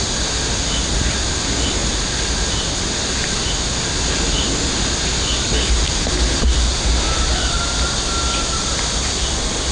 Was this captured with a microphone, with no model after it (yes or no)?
yes